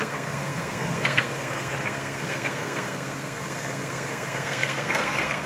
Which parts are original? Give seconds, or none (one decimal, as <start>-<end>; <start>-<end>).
none